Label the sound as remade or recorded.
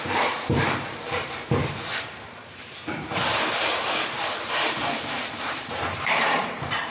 remade